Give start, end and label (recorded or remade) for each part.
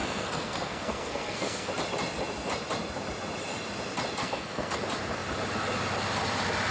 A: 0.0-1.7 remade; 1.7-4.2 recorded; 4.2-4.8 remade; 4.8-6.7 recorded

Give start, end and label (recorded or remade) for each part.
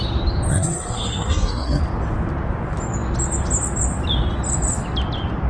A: 0.0-0.5 recorded; 0.5-1.8 remade; 1.8-5.5 recorded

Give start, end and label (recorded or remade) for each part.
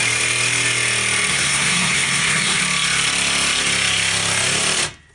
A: 0.0-1.3 recorded; 1.3-2.6 remade; 2.6-5.1 recorded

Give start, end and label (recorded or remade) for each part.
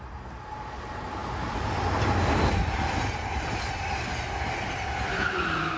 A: 0.0-5.8 recorded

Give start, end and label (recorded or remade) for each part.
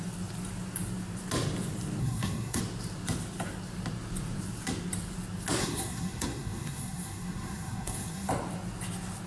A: 0.0-2.0 recorded; 2.0-2.6 remade; 2.6-5.6 recorded; 5.6-8.3 remade; 8.3-9.3 recorded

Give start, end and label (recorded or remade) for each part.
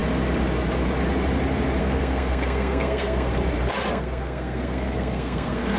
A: 0.0-1.8 recorded; 1.8-3.3 remade; 3.3-3.9 recorded; 3.9-5.8 remade